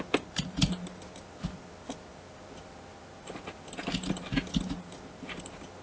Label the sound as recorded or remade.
recorded